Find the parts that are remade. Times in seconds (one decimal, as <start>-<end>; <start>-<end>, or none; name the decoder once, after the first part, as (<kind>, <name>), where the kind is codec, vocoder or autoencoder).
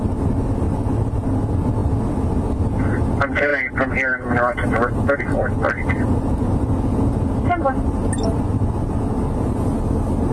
none